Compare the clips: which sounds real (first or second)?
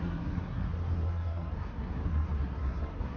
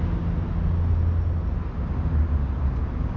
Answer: second